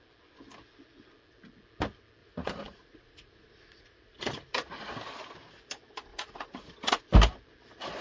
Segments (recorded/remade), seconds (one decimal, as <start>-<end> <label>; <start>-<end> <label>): 0.0-2.2 recorded; 2.2-4.9 remade; 4.9-6.1 recorded; 6.1-7.0 remade; 7.0-8.0 recorded